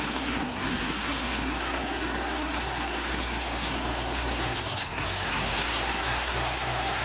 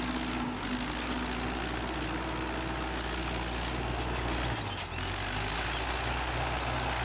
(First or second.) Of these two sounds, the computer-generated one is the first